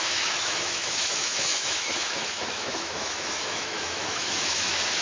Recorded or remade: remade